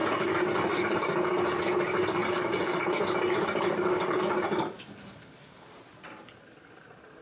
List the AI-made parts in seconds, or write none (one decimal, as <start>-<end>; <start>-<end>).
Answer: none